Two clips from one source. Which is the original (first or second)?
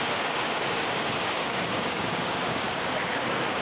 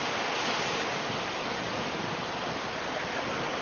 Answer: second